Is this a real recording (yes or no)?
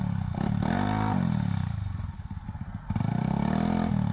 yes